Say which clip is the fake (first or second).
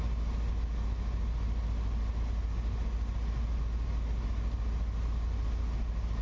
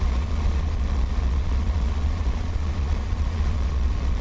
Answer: second